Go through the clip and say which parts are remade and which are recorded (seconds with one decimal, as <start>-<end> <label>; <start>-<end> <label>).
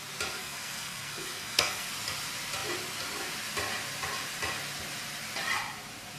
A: 0.0-0.4 recorded; 0.4-1.9 remade; 1.9-6.2 recorded